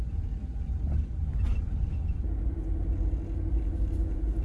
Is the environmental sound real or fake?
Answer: real